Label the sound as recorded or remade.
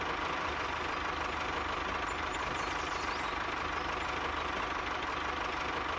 recorded